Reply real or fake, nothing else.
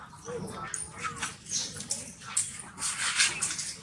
real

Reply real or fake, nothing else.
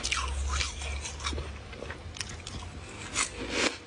real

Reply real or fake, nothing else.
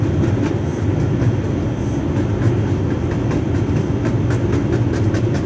real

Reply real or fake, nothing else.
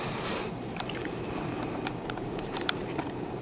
fake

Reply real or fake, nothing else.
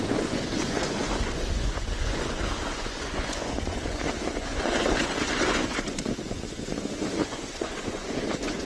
fake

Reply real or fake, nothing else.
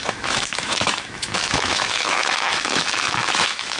fake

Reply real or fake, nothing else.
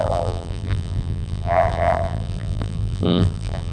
fake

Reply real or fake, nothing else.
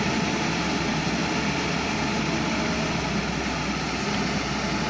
real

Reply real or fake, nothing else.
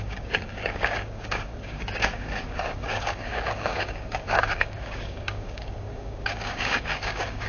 fake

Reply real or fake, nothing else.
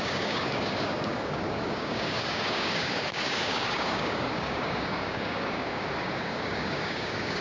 fake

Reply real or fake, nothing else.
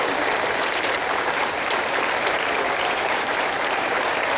fake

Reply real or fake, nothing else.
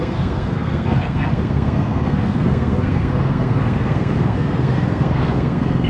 fake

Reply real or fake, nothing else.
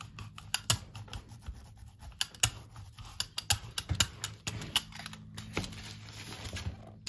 real